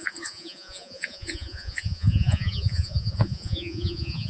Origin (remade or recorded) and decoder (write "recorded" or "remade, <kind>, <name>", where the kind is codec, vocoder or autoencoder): remade, vocoder, Vocos